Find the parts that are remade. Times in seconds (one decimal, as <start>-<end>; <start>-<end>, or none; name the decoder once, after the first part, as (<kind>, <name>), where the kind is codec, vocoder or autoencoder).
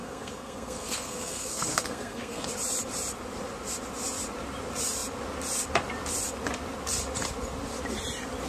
0.0-2.5 (codec, SNAC)